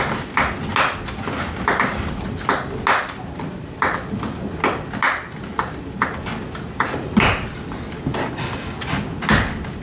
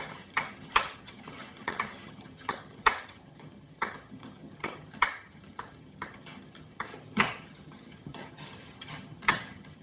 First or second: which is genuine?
first